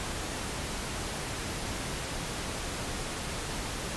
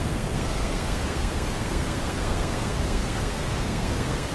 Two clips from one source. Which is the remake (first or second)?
second